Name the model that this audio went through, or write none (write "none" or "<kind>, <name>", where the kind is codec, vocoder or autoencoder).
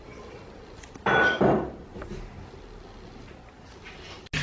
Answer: none